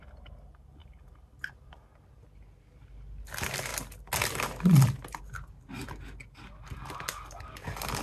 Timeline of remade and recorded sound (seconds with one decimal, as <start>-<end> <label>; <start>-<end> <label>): 0.0-0.8 recorded; 0.8-1.7 remade; 1.7-8.0 recorded